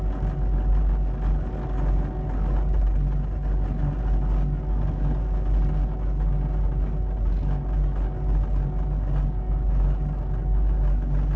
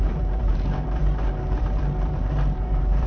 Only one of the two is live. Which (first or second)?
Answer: first